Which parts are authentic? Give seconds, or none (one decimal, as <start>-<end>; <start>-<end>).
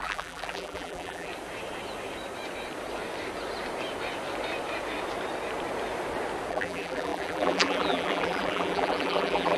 1.3-6.5